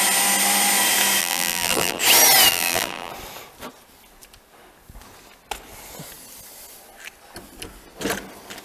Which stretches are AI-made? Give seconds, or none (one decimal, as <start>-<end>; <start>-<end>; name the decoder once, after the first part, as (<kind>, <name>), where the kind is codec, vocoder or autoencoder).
1.2-2.0 (vocoder, BigVGAN v2); 2.5-3.1